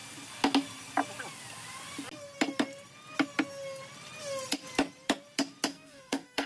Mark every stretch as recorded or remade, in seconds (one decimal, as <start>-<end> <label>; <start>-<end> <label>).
0.0-5.7 recorded; 5.7-6.5 remade